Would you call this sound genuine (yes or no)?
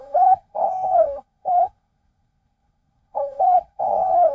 no